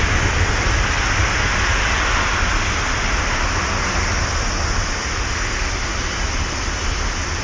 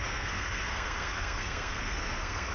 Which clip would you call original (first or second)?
first